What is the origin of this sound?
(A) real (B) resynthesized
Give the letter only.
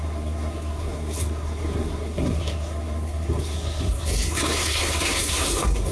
B